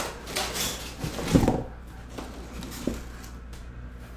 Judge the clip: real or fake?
real